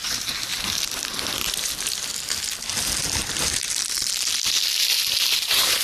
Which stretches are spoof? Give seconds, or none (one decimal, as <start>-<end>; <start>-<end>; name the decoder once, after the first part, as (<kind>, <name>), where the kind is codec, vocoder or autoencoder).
none